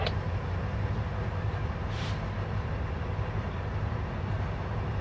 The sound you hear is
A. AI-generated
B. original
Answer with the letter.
A